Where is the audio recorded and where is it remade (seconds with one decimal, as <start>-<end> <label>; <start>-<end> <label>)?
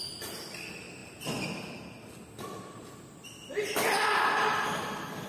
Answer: 0.0-5.3 recorded